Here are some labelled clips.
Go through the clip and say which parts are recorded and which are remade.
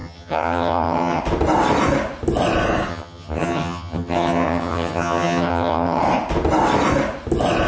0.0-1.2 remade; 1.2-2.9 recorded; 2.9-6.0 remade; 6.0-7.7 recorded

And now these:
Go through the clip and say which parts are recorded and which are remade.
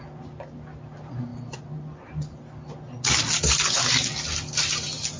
0.0-5.2 recorded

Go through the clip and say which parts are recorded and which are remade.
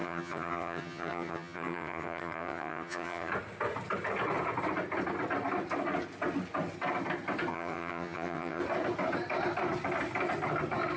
0.0-3.3 remade; 3.3-7.5 recorded; 7.5-8.6 remade; 8.6-11.0 recorded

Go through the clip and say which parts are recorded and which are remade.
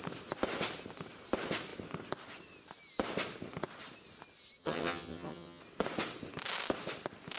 0.0-4.6 recorded; 4.6-5.6 remade; 5.6-7.4 recorded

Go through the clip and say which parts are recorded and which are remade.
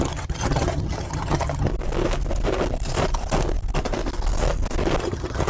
0.0-1.7 remade; 1.7-5.0 recorded; 5.0-5.5 remade